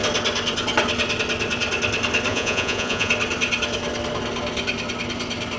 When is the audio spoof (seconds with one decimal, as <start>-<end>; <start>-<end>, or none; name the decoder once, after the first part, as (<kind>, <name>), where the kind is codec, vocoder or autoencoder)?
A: 2.3-3.1 (vocoder, Vocos)